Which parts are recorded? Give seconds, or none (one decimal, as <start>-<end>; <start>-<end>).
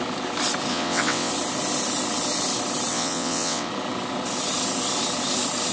0.0-0.7; 1.3-2.9; 3.7-5.7